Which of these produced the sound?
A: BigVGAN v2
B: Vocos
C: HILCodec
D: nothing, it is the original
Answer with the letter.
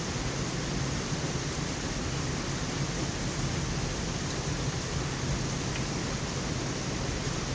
D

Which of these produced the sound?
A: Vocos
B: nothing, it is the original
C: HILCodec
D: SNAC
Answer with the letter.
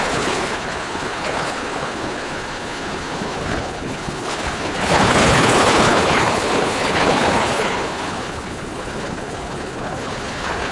C